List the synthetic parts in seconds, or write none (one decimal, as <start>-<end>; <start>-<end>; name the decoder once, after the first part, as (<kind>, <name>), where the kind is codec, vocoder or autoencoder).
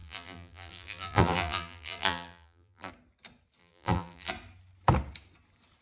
0.0-2.9 (vocoder, BigVGAN v2); 3.6-4.3